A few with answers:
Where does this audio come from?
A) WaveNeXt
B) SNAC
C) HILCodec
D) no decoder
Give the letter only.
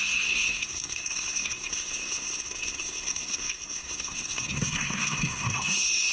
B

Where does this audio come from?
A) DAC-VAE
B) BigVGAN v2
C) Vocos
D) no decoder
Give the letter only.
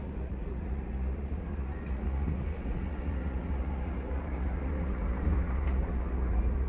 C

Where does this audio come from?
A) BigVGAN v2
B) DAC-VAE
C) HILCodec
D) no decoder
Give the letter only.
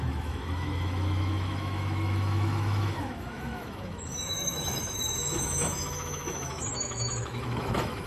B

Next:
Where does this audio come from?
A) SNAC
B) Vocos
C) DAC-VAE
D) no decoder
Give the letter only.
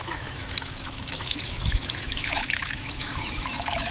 C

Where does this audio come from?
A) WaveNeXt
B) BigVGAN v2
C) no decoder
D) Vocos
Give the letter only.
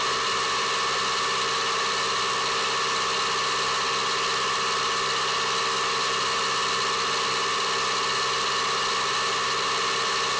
C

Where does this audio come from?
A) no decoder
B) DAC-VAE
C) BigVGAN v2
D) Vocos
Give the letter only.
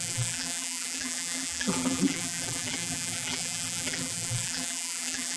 C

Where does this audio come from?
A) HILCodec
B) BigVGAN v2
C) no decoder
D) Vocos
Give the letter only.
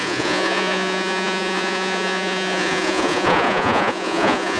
D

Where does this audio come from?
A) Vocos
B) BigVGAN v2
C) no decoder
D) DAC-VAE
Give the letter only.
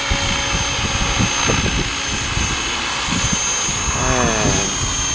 C